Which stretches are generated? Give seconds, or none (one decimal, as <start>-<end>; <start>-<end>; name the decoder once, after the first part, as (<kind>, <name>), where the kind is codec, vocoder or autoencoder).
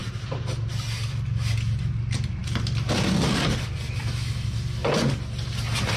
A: none